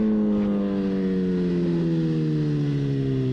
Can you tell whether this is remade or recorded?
recorded